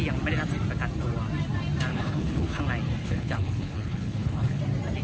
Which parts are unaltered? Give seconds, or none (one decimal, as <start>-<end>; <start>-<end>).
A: 0.0-1.9; 2.6-3.0; 4.6-5.0